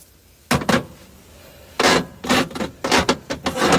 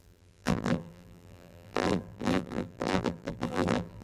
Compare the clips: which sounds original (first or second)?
first